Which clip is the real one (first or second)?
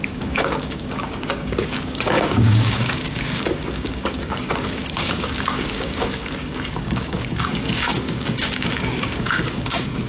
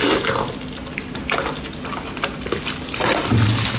second